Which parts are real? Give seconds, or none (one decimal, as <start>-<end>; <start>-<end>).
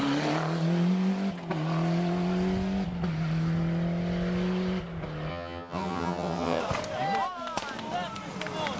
0.0-5.3; 6.6-8.8